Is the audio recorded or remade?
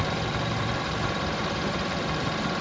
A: remade